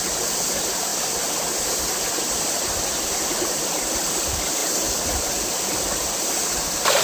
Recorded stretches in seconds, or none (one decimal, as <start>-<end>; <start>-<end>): 0.9-2.4